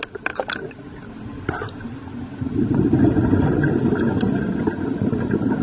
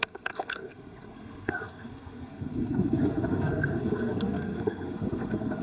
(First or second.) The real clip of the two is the first